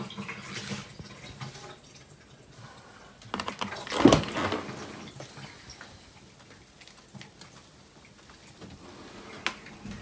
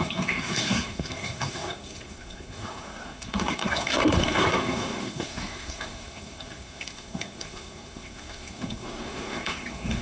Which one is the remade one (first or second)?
second